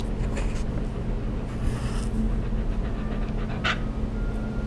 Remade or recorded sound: recorded